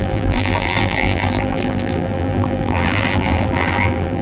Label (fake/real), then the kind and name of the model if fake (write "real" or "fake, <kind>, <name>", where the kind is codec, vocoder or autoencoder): fake, vocoder, BigVGAN v2